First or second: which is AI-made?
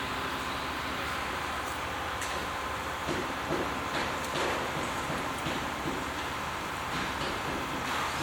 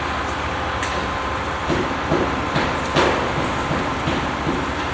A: first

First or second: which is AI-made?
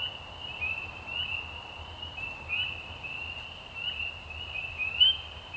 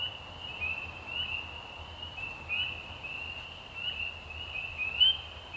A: first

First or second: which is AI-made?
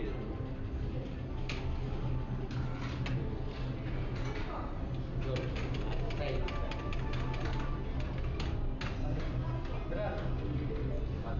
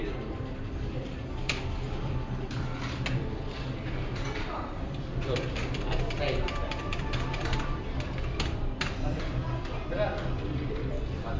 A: second